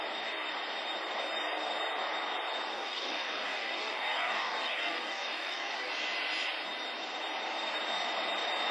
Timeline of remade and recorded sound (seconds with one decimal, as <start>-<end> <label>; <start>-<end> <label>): 0.0-2.7 recorded; 2.7-5.9 remade; 5.9-8.7 recorded